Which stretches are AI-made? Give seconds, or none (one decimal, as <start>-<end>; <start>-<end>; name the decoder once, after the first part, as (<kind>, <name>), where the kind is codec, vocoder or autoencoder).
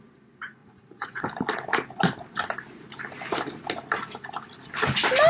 0.6-1.2 (vocoder, Vocos)